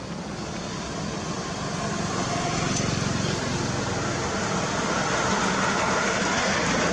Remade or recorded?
recorded